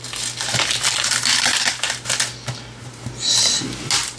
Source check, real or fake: real